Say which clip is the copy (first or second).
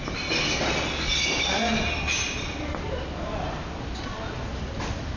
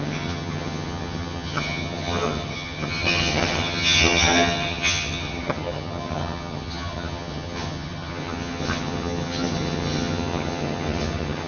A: second